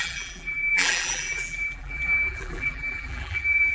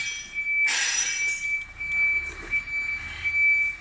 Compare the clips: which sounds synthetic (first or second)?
first